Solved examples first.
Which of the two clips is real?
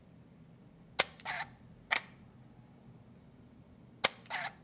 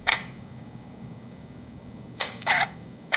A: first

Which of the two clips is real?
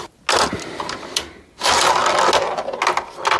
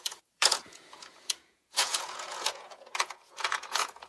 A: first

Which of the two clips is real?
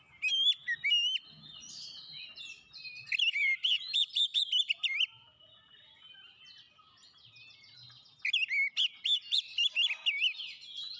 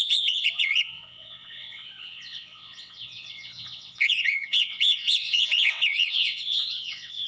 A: first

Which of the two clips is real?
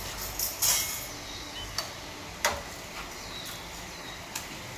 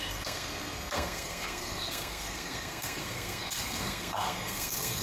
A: first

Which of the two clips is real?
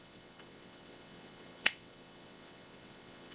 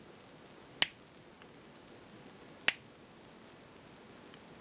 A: second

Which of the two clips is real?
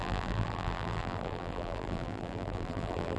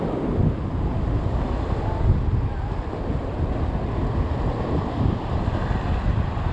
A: second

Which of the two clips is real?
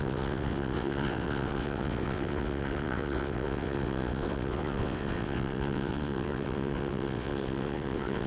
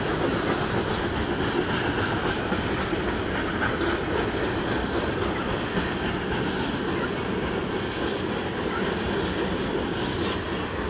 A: second